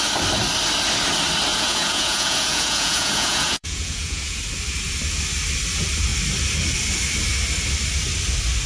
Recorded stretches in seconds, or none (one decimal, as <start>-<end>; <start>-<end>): 0.0-1.5; 4.4-8.7